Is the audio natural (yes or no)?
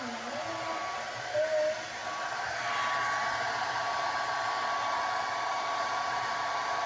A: yes